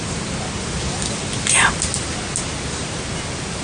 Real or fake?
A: real